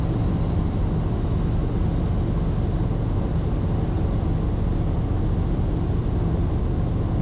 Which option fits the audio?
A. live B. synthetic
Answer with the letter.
A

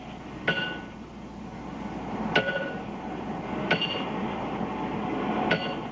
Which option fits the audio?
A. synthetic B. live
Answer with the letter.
B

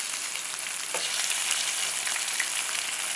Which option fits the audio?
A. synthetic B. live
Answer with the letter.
B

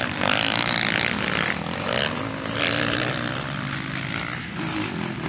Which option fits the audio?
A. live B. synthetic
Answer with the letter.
B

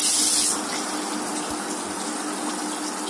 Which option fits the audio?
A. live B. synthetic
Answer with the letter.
A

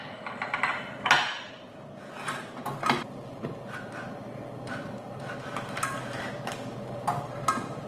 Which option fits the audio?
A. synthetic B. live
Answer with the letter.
B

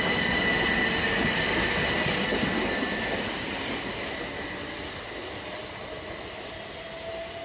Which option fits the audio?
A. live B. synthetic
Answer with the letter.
A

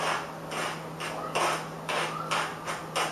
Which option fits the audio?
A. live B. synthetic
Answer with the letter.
A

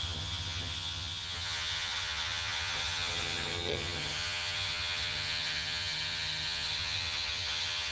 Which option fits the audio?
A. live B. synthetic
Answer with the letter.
B